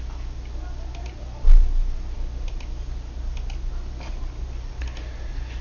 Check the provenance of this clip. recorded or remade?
recorded